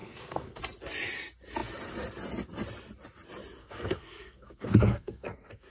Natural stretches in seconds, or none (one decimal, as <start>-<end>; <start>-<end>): 0.6-3.6